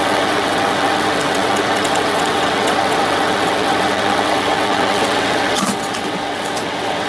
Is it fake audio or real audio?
fake